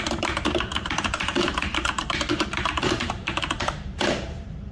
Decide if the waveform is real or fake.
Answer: fake